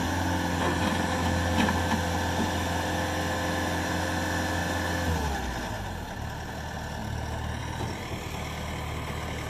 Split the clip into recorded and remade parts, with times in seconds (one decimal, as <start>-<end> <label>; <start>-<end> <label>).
0.0-9.5 recorded